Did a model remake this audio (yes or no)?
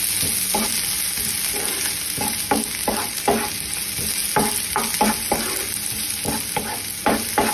no